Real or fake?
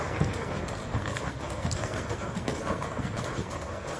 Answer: fake